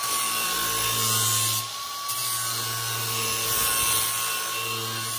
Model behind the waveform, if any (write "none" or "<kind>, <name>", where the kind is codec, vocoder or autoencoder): none